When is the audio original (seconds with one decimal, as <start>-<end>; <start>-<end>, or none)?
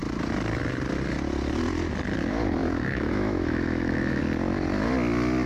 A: 0.0-2.6; 4.2-5.5